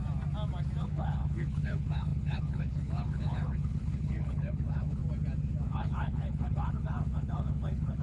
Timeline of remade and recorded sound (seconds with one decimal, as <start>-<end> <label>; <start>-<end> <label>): 0.0-0.8 recorded; 0.8-5.0 remade; 5.0-5.7 recorded; 5.7-8.0 remade